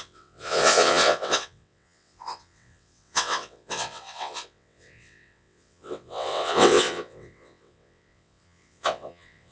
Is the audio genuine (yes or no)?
no